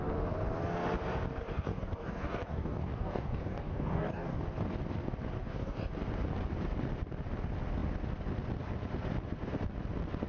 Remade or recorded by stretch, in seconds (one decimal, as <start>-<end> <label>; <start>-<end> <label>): 0.0-1.4 recorded; 1.4-4.4 remade; 4.4-5.4 recorded; 5.4-5.9 remade; 5.9-10.3 recorded